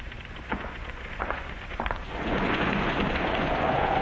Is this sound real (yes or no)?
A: no